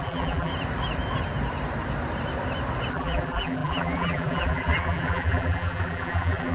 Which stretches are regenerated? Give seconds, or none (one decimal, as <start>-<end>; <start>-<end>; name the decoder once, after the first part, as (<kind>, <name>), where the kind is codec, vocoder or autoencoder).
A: 0.0-0.5 (vocoder, BigVGAN v2); 2.9-6.5